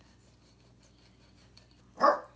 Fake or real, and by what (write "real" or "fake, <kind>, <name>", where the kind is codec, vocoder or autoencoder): real